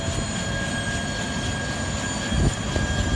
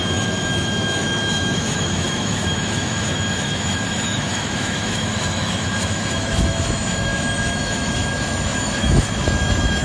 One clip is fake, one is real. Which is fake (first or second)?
second